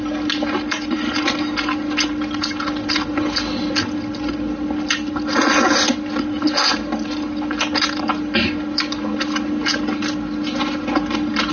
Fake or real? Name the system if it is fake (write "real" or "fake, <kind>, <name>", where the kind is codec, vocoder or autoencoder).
real